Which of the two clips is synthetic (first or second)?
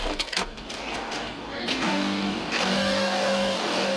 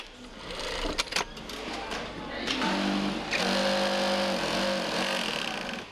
first